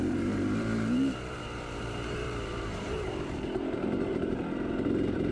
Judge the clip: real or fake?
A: fake